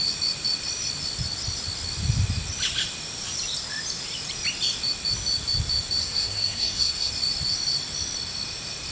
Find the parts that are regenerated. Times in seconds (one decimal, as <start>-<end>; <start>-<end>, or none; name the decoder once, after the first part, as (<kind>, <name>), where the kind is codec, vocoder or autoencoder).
6.0-7.1 (codec, SNAC)